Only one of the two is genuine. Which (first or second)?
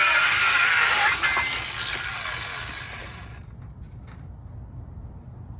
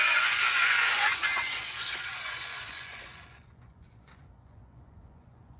first